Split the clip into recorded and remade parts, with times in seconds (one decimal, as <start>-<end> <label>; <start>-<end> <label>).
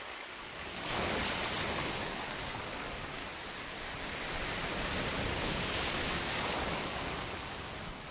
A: 0.0-1.2 remade; 1.2-2.0 recorded; 2.0-3.2 remade; 3.2-5.4 recorded; 5.4-8.1 remade